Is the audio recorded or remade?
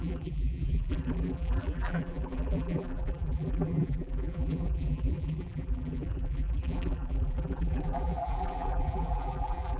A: remade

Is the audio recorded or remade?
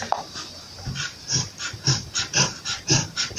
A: remade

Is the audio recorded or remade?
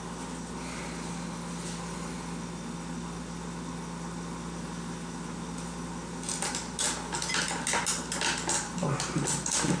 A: recorded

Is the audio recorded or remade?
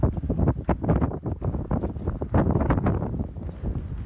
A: recorded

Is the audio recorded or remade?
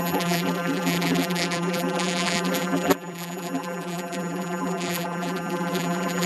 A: remade